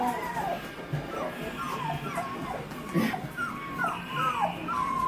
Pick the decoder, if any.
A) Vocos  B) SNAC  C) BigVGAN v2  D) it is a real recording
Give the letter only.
D